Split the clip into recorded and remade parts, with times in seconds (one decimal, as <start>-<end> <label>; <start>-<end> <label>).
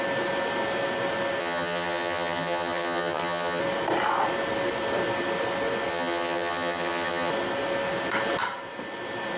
0.0-1.4 recorded; 1.4-3.6 remade; 3.6-5.9 recorded; 5.9-7.3 remade; 7.3-9.4 recorded